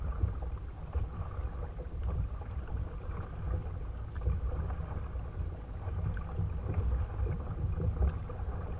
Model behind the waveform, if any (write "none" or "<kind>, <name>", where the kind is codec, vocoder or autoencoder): none